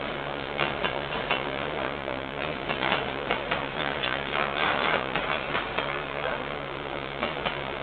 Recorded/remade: remade